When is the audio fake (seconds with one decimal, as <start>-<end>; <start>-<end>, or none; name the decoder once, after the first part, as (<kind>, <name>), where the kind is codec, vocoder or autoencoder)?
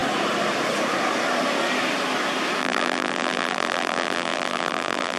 2.6-5.2 (vocoder, BigVGAN v2)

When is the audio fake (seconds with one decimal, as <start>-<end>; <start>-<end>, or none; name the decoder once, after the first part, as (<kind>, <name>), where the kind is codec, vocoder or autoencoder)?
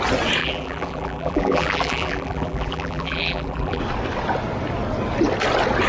0.4-3.8 (vocoder, BigVGAN v2)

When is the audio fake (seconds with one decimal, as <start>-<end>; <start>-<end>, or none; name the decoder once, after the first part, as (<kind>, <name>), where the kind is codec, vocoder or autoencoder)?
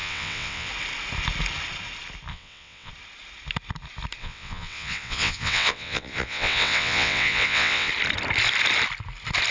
0.0-0.7 (vocoder, WaveNeXt); 2.3-2.9; 4.2-7.9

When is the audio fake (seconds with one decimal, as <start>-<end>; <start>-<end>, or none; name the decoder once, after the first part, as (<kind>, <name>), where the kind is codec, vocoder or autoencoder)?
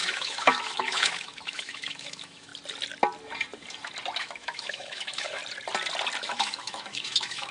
0.0-2.5 (autoencoder, DAC-VAE); 4.2-5.4; 6.2-7.5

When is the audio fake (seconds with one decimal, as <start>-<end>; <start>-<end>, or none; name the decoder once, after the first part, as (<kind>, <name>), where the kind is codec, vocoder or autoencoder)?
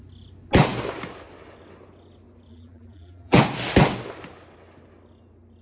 2.5-3.4 (vocoder, BigVGAN v2)